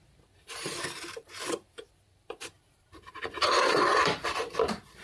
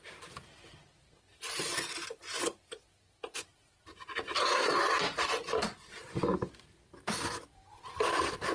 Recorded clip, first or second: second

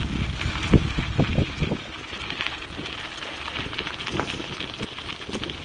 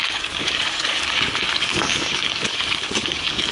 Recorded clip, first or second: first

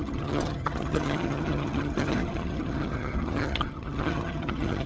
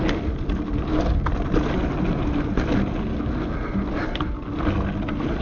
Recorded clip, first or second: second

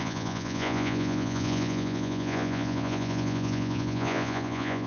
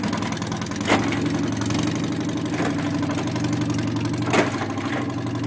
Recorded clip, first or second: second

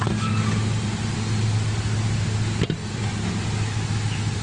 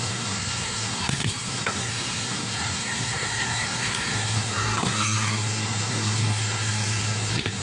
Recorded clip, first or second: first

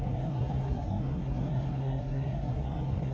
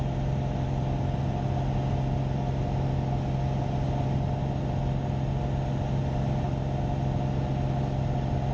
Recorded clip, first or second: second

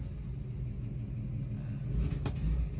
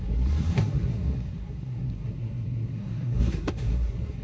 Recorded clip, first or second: first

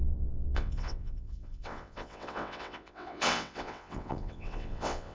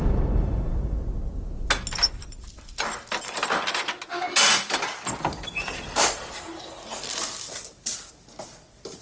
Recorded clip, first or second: second